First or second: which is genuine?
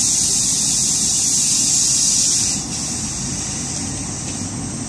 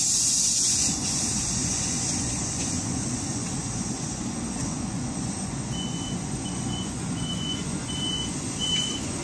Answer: first